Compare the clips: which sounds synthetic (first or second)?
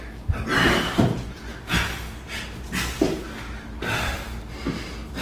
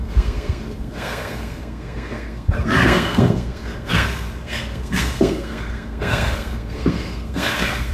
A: second